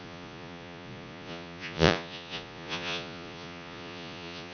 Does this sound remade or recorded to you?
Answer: remade